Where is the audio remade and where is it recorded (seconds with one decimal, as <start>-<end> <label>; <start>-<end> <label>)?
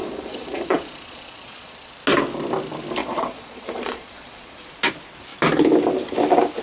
0.0-1.9 remade; 1.9-3.0 recorded; 3.0-4.6 remade; 4.6-6.6 recorded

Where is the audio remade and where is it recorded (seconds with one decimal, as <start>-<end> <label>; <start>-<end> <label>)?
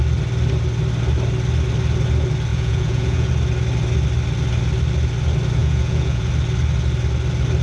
0.0-2.5 recorded; 2.5-3.3 remade; 3.3-5.6 recorded; 5.6-6.3 remade; 6.3-7.6 recorded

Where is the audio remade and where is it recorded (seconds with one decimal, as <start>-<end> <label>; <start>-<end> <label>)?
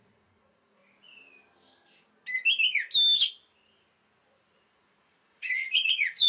0.0-0.8 remade; 0.8-4.6 recorded; 4.6-6.3 remade